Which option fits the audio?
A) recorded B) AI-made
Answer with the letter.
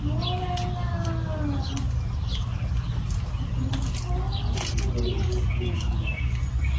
A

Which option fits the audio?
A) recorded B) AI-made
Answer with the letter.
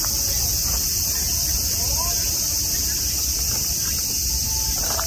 A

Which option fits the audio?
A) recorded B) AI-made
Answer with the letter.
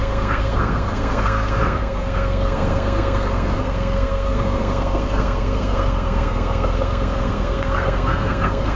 B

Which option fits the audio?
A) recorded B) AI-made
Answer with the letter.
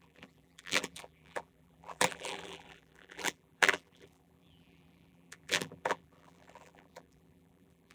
B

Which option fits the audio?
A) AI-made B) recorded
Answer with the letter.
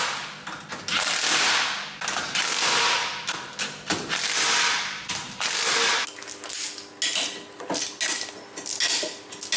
B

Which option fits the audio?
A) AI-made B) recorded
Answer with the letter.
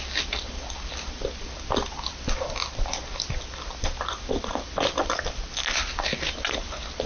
B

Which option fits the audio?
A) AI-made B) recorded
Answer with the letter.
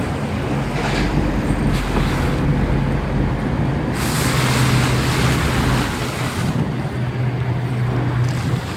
B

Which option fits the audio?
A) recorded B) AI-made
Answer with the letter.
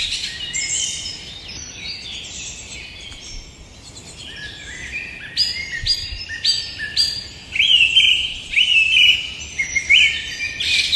A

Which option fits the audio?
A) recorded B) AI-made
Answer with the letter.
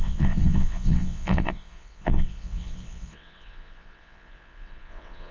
B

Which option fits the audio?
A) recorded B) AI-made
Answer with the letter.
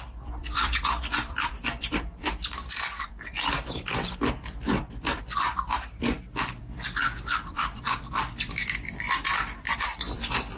B